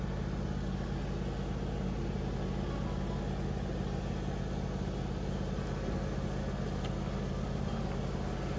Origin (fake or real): real